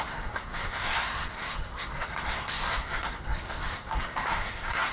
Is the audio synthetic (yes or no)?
yes